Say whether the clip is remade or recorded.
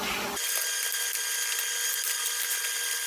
recorded